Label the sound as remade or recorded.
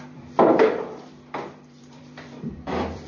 remade